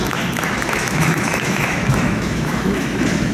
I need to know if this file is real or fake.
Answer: fake